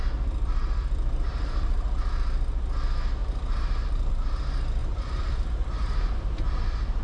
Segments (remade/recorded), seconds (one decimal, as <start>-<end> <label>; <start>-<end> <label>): 0.0-1.3 recorded; 1.3-2.0 remade; 2.0-3.2 recorded; 3.2-4.1 remade; 4.1-4.8 recorded; 4.8-5.3 remade; 5.3-5.8 recorded; 5.8-6.5 remade; 6.5-7.0 recorded